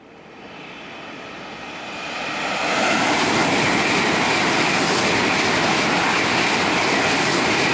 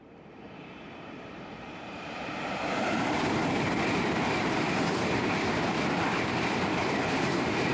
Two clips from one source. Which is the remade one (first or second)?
second